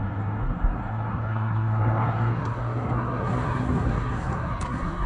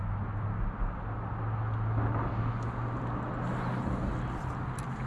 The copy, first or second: first